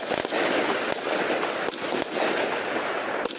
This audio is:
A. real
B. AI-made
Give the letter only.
A